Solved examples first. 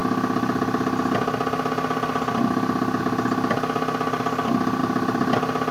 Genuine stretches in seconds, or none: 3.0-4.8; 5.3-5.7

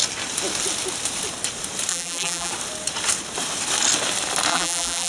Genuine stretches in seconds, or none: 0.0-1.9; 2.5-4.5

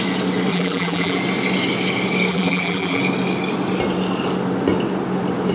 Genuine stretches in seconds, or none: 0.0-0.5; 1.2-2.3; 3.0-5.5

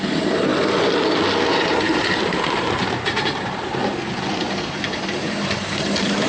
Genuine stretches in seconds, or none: 0.5-1.5; 3.8-4.4